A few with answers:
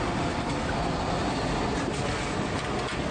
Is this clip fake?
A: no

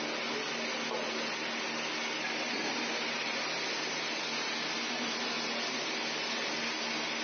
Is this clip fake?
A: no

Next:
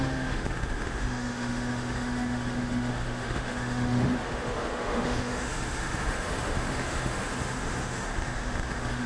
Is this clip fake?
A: yes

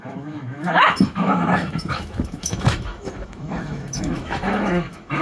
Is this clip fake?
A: yes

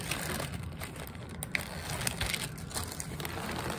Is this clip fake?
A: no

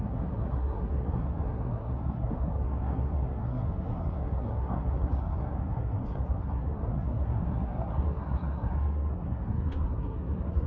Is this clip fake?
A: yes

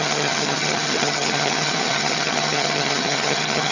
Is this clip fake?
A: yes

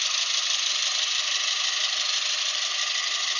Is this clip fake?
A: no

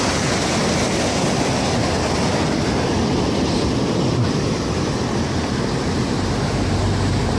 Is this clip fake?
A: no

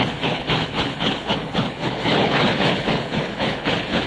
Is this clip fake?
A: yes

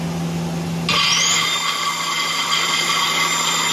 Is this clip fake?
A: no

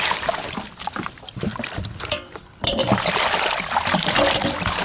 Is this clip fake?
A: yes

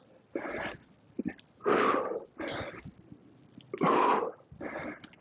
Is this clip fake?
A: no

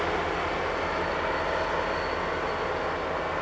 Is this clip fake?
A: no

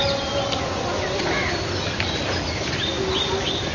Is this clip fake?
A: no